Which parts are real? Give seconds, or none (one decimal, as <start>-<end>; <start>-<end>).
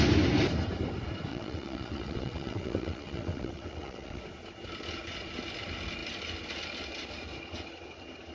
0.0-1.3; 4.2-8.3